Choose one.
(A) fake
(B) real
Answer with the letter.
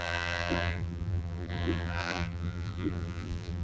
A